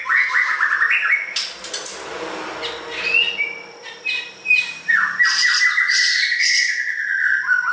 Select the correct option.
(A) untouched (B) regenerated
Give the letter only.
A